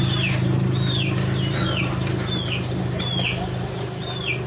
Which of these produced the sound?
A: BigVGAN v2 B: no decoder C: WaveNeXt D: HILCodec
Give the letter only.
B